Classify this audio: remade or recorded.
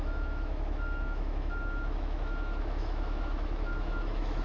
remade